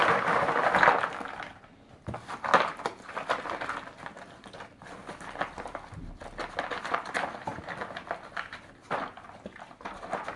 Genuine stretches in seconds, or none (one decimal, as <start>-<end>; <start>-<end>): 0.0-10.4